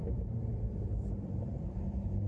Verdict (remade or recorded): remade